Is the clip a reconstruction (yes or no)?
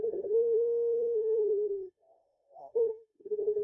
yes